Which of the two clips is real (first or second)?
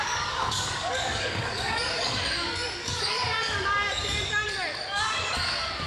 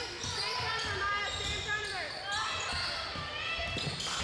second